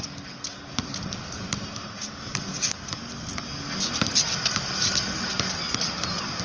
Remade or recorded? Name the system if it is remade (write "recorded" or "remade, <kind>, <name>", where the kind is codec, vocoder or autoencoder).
recorded